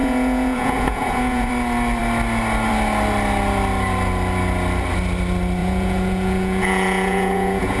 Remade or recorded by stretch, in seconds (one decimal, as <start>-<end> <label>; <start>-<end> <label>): 0.0-1.5 remade; 1.5-5.6 recorded; 5.6-7.8 remade